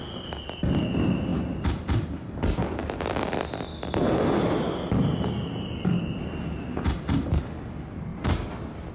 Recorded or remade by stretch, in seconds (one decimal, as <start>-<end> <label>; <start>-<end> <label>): 0.0-1.3 recorded; 1.3-2.3 remade; 2.3-5.1 recorded; 5.1-7.0 remade; 7.0-8.1 recorded; 8.1-8.9 remade